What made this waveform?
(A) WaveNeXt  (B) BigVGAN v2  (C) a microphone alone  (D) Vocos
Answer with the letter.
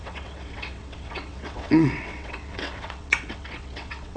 A